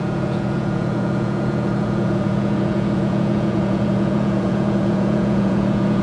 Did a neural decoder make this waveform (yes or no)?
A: yes